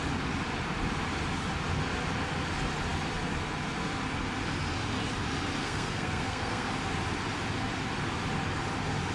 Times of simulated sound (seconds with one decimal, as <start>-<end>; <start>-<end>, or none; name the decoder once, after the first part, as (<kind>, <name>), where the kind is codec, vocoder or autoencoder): 5.6-6.7 (codec, SNAC)